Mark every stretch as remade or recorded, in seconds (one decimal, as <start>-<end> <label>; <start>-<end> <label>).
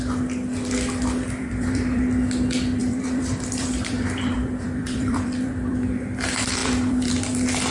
0.0-1.4 recorded; 1.4-2.0 remade; 2.0-2.8 recorded; 2.8-6.0 remade; 6.0-6.6 recorded; 6.6-7.1 remade; 7.1-7.7 recorded